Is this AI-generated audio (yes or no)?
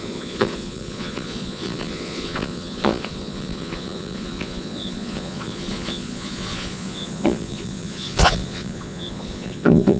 yes